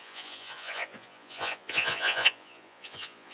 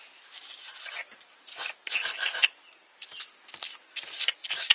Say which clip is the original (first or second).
second